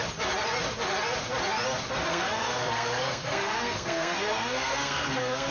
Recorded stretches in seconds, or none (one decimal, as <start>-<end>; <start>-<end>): 0.0-2.1